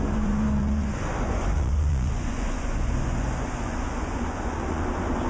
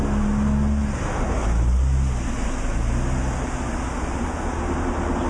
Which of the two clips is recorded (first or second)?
second